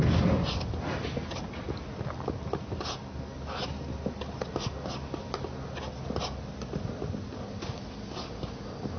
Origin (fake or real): real